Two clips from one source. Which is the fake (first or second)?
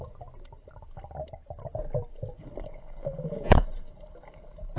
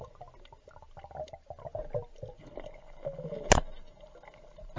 first